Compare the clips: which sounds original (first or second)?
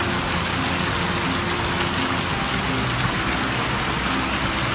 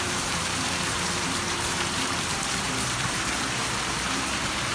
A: first